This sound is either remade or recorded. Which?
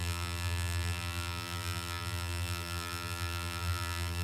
remade